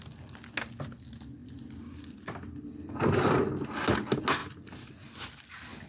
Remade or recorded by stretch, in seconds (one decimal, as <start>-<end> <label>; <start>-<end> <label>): 0.0-5.9 recorded

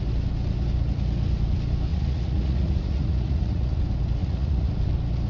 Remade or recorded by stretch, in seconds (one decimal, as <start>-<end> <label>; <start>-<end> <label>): 0.0-1.9 recorded; 1.9-3.8 remade; 3.8-4.2 recorded; 4.2-4.7 remade; 4.7-5.3 recorded

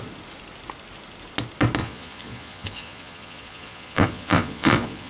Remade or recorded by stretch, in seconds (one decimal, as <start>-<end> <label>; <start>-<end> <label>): 0.0-1.8 recorded; 1.8-5.1 remade

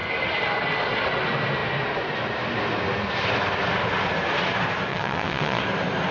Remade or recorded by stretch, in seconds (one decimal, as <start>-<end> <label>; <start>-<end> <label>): 0.0-4.9 recorded; 4.9-5.6 remade; 5.6-6.1 recorded

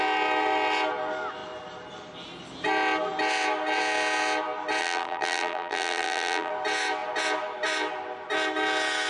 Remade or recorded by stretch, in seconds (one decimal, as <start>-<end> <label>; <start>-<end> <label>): 0.0-4.8 recorded; 4.8-6.5 remade; 6.5-9.1 recorded